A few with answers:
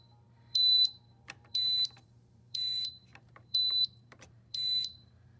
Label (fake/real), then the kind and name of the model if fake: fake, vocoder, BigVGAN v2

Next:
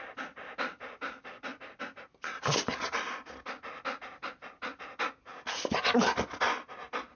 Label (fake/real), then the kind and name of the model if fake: real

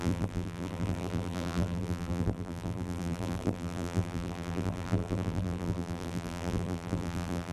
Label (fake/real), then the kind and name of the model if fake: fake, vocoder, BigVGAN v2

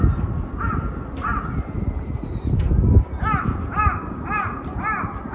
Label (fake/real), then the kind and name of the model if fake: real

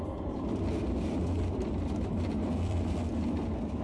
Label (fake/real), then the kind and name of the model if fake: fake, vocoder, BigVGAN v2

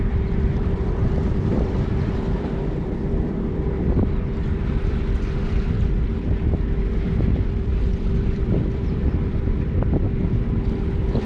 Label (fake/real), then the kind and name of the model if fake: fake, vocoder, BigVGAN v2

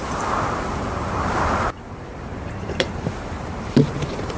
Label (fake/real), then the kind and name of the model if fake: fake, vocoder, BigVGAN v2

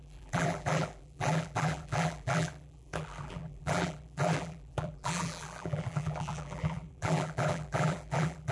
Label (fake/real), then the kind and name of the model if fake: fake, vocoder, BigVGAN v2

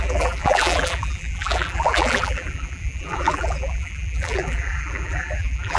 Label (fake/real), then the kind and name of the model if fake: fake, vocoder, BigVGAN v2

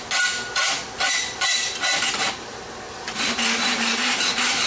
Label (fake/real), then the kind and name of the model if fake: real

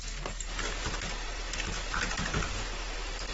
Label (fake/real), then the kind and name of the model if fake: real